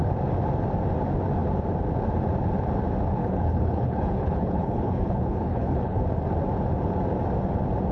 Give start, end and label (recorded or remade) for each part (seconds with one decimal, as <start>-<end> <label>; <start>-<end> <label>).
0.0-3.2 recorded; 3.2-6.0 remade; 6.0-7.9 recorded